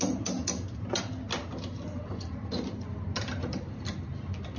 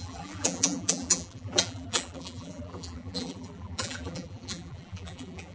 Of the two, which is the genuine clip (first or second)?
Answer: first